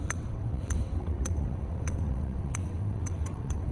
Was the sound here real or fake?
fake